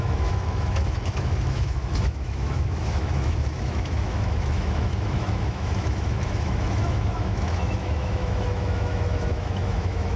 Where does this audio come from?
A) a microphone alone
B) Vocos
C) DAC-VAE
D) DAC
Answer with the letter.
C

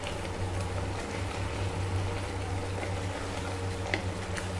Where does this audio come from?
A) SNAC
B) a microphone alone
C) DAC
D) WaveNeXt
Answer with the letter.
B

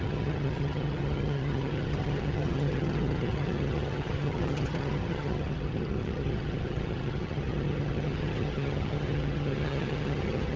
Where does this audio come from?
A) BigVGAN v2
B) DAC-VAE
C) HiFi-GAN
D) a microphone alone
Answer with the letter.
C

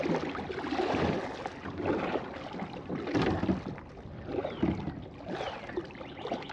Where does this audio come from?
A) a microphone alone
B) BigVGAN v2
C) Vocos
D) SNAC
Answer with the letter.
A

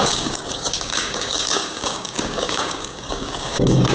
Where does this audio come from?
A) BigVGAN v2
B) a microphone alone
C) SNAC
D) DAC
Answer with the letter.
D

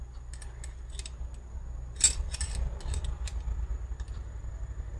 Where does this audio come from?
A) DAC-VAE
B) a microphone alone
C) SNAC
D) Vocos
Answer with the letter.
B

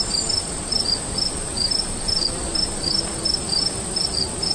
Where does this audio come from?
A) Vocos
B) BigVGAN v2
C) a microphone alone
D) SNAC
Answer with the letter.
B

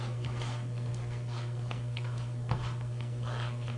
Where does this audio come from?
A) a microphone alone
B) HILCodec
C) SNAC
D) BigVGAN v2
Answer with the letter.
C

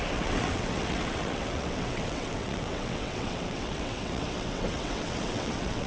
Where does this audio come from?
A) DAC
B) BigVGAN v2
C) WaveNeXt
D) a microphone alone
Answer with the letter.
C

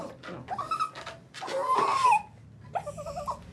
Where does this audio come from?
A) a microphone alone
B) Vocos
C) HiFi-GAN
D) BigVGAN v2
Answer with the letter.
A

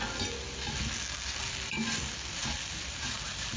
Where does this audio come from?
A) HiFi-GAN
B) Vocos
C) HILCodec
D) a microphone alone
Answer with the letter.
D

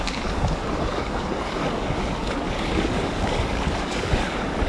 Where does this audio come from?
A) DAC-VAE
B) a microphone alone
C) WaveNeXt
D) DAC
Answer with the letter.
D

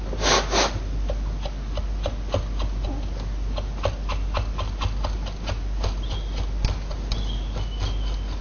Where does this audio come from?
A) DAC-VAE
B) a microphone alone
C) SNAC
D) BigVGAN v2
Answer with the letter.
B